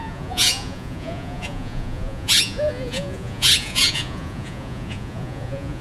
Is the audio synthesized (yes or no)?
yes